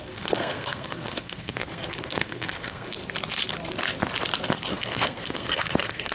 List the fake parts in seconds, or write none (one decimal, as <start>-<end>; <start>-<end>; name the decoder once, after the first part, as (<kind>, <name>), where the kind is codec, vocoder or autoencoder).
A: 0.0-3.0 (codec, SNAC); 4.7-6.1